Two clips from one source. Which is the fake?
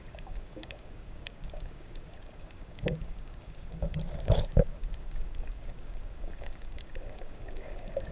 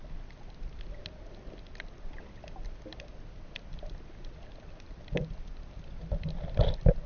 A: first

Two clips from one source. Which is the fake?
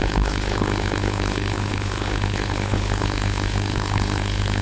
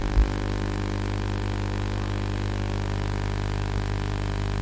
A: first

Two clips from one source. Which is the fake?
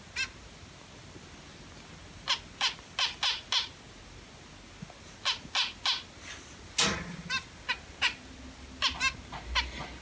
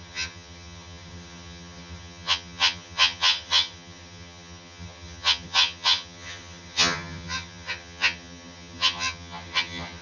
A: second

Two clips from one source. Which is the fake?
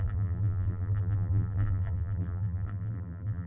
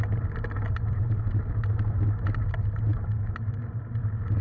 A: first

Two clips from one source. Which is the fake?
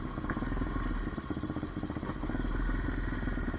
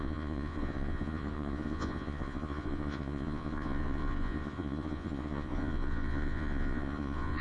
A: second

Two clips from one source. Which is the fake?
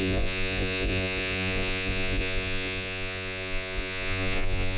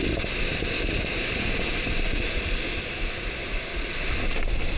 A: first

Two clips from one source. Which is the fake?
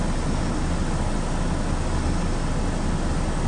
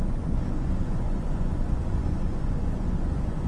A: second